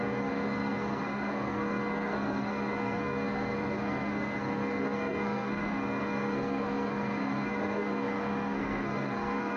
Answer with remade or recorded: remade